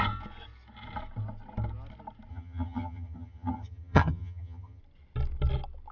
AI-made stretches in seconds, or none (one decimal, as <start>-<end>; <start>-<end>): 2.3-4.8